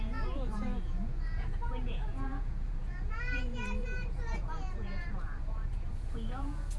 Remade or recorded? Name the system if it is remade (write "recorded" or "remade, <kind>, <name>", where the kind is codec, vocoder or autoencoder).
remade, vocoder, Vocos